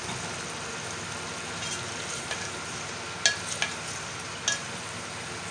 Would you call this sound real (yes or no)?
yes